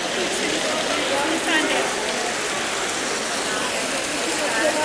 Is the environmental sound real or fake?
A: real